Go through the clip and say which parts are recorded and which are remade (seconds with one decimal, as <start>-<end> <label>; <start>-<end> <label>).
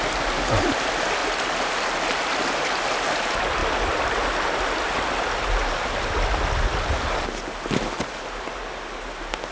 0.0-9.5 recorded